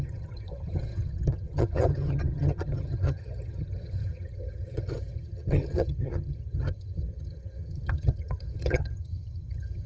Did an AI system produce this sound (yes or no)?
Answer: yes